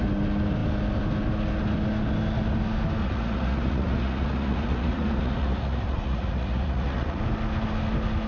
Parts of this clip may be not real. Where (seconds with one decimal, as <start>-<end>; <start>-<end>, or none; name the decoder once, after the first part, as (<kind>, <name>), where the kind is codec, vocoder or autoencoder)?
3.0-7.2 (vocoder, Vocos)